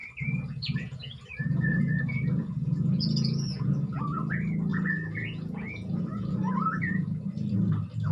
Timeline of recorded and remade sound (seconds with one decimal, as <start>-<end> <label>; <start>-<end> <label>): 0.0-4.0 remade; 4.0-4.7 recorded; 4.7-7.2 remade; 7.2-8.1 recorded